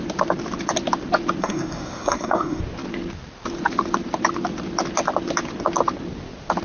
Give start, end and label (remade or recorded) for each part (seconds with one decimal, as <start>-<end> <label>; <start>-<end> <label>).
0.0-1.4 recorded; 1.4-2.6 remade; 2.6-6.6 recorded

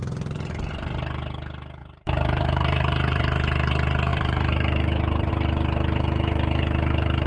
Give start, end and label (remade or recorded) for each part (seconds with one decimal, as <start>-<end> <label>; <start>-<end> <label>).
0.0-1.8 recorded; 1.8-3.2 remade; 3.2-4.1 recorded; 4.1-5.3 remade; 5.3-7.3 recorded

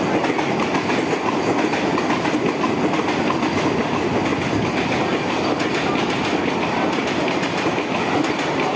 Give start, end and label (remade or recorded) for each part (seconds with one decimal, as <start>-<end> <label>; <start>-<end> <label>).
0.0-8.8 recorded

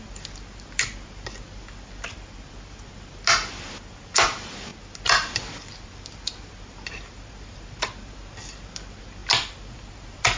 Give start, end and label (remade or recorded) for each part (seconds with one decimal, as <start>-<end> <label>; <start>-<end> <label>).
0.0-10.4 recorded

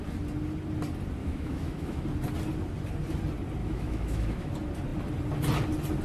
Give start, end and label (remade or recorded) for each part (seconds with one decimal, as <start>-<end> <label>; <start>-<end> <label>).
0.0-1.2 recorded; 1.2-2.0 remade; 2.0-3.6 recorded; 3.6-4.5 remade; 4.5-6.0 recorded

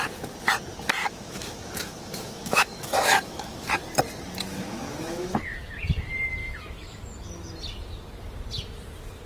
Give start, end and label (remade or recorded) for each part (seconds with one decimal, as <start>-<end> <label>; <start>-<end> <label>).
0.0-1.0 recorded; 1.0-3.7 remade; 3.7-4.5 recorded; 4.5-5.7 remade; 5.7-6.4 recorded; 6.4-7.0 remade; 7.0-9.3 recorded